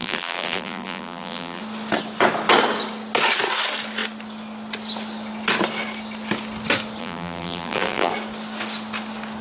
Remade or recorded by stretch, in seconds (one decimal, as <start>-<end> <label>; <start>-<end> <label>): 0.0-1.6 remade; 1.6-7.0 recorded; 7.0-8.1 remade; 8.1-9.4 recorded